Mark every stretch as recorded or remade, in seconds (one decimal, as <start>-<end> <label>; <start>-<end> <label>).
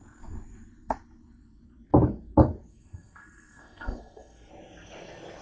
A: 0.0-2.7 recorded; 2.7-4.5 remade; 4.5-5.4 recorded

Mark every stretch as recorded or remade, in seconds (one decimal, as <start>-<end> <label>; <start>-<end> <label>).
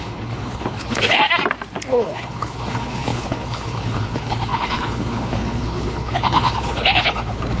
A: 0.0-1.2 remade; 1.2-1.9 recorded; 1.9-7.6 remade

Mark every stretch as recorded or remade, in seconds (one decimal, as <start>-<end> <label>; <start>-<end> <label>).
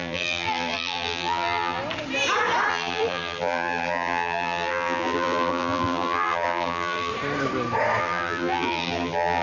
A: 0.0-1.8 remade; 1.8-2.7 recorded; 2.7-7.1 remade; 7.1-8.0 recorded; 8.0-9.4 remade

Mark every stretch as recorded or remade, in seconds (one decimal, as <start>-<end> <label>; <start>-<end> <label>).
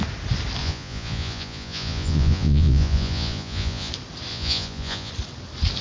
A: 0.0-0.6 recorded; 0.6-3.9 remade; 3.9-4.3 recorded; 4.3-5.1 remade; 5.1-5.8 recorded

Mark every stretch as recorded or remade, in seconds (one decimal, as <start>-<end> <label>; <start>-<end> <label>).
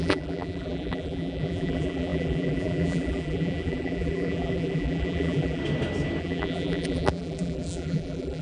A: 0.0-5.6 remade; 5.6-6.2 recorded; 6.2-8.4 remade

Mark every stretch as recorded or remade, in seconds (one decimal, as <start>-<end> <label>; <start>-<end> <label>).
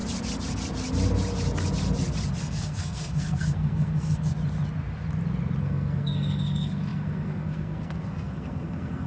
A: 0.0-2.4 recorded; 2.4-4.3 remade; 4.3-5.6 recorded; 5.6-9.1 remade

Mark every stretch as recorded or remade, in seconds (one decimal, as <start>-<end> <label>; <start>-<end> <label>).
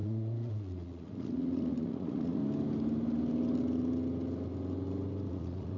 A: 0.0-2.4 remade; 2.4-5.3 recorded; 5.3-5.8 remade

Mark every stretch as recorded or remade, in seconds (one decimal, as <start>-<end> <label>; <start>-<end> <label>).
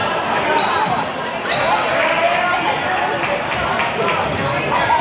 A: 0.0-5.0 recorded